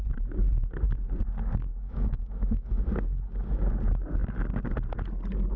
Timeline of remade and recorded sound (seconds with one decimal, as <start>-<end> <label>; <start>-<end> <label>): 0.0-1.7 recorded; 1.7-2.8 remade; 2.8-5.6 recorded

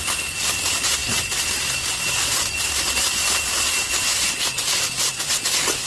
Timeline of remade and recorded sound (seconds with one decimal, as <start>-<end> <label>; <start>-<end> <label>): 0.0-5.9 recorded

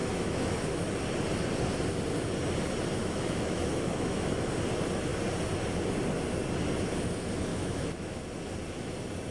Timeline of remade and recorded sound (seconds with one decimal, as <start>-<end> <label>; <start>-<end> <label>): 0.0-0.9 remade; 0.9-3.0 recorded; 3.0-4.5 remade; 4.5-7.5 recorded; 7.5-8.2 remade; 8.2-9.3 recorded

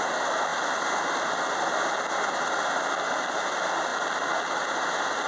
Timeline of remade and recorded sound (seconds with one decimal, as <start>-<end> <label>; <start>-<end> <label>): 0.0-5.3 recorded

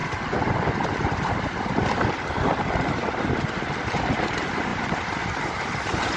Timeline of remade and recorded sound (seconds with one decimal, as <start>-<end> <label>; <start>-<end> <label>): 0.0-4.7 recorded; 4.7-5.6 remade; 5.6-6.2 recorded

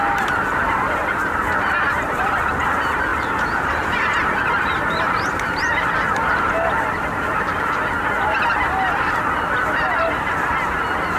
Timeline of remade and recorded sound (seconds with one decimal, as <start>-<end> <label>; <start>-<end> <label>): 0.0-3.1 recorded; 3.1-7.6 remade; 7.6-11.2 recorded

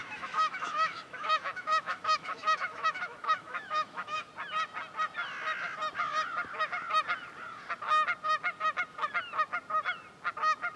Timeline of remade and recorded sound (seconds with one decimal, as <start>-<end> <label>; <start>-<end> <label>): 0.0-4.3 remade; 4.3-10.8 recorded